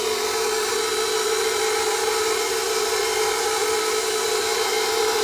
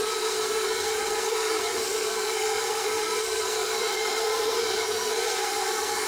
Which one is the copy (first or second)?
second